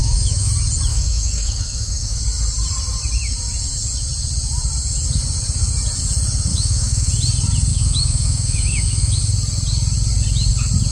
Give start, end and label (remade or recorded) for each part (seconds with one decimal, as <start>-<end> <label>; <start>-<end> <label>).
0.0-0.5 remade; 0.5-0.9 recorded; 0.9-2.2 remade; 2.2-6.5 recorded; 6.5-7.1 remade; 7.1-7.7 recorded; 7.7-9.2 remade; 9.2-10.9 recorded